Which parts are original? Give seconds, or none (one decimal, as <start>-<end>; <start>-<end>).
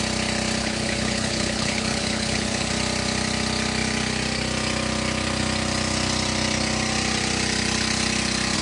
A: 0.0-0.6; 2.7-8.6